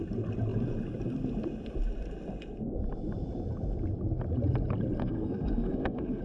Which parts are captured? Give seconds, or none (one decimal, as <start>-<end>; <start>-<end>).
0.0-5.0